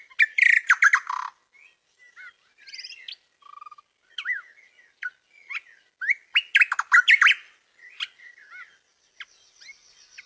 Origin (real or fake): real